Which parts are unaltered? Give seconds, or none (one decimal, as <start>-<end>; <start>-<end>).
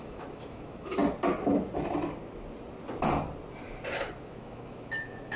1.0-4.2